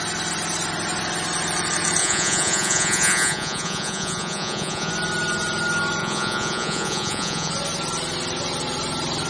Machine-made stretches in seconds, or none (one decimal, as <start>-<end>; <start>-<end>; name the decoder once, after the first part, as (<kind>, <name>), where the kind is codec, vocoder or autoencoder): 2.0-4.9 (vocoder, Vocos); 6.0-7.5